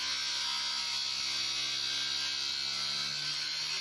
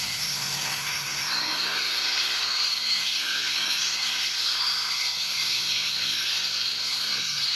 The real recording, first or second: first